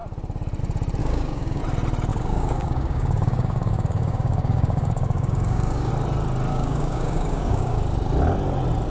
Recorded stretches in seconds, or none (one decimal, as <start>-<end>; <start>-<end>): 0.0-1.0; 1.6-2.1; 5.9-6.5; 7.8-8.9